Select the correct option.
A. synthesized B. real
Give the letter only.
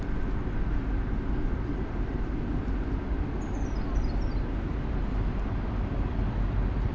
B